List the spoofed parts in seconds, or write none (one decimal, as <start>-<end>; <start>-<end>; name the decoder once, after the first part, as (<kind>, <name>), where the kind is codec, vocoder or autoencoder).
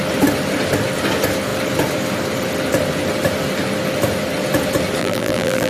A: 5.0-5.7 (vocoder, BigVGAN v2)